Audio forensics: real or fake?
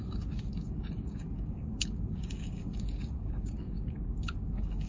fake